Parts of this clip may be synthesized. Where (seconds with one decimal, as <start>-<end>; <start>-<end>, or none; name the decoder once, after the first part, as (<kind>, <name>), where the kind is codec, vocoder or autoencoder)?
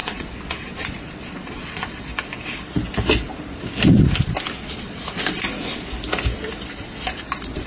0.0-2.0 (vocoder, Vocos); 4.6-5.2